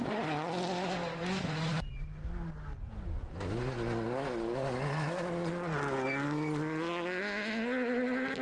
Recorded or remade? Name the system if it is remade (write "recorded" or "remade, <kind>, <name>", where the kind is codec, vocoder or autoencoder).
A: recorded